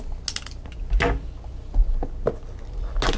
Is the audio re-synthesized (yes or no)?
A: no